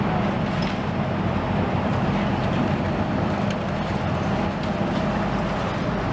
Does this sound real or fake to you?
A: real